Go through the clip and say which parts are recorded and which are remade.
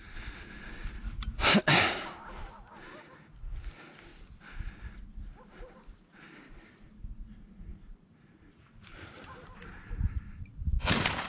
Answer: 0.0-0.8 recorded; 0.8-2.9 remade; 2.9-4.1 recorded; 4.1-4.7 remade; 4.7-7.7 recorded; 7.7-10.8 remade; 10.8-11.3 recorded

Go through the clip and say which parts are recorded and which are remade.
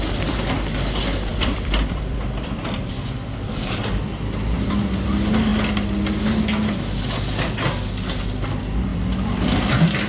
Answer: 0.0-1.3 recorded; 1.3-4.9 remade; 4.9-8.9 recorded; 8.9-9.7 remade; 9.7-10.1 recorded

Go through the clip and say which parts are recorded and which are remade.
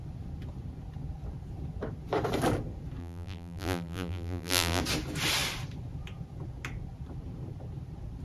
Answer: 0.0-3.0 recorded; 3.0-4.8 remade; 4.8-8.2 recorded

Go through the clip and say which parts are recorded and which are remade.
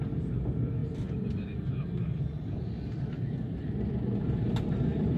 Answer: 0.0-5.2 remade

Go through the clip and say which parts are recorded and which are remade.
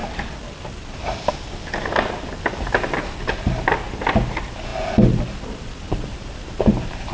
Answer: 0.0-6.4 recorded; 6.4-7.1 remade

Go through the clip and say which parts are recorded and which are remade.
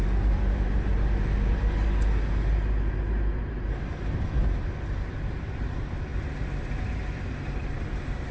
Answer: 0.0-0.9 remade; 0.9-5.1 recorded; 5.1-8.3 remade